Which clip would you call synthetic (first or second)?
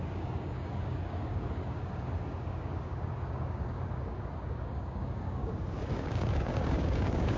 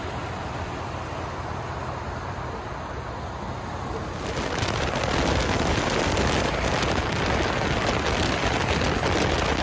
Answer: first